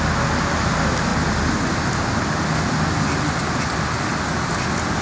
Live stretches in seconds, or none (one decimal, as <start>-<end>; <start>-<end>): 0.0-5.0